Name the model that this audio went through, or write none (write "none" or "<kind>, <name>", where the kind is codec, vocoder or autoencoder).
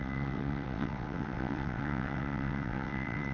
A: vocoder, WaveNeXt